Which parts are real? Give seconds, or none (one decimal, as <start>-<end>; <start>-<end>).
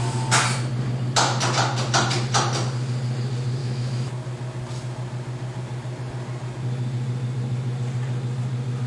0.0-3.6; 4.1-8.9